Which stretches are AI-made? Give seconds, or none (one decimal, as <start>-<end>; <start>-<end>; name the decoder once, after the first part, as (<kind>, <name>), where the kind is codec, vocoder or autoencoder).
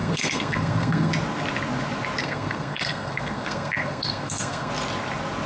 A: 0.0-1.1 (codec, SNAC); 2.2-4.7